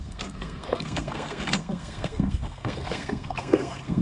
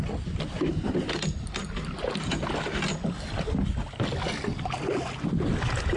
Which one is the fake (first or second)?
first